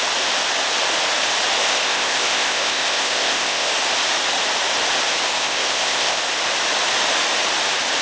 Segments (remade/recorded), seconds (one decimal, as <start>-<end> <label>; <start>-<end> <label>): 0.0-1.6 recorded; 1.6-3.7 remade; 3.7-5.3 recorded; 5.3-6.2 remade; 6.2-8.0 recorded